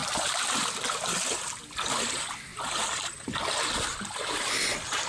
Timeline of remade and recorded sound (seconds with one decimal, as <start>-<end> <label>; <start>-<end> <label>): 0.0-0.6 remade; 0.6-5.1 recorded